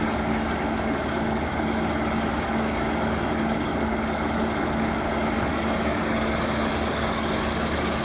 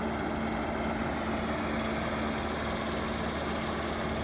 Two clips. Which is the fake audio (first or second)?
first